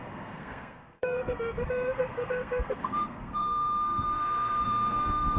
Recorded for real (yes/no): no